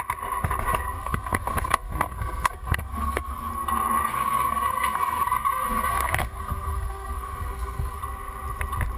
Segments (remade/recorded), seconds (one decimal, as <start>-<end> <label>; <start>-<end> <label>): 0.0-1.0 recorded; 1.0-3.5 remade; 3.5-4.1 recorded; 4.1-8.0 remade; 8.0-9.0 recorded